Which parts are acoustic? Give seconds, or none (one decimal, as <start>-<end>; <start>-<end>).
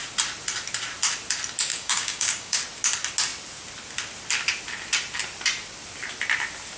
0.0-1.7; 2.6-6.8